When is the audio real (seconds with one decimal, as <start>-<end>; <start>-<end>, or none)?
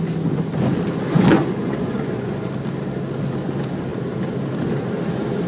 0.0-1.1; 2.5-5.5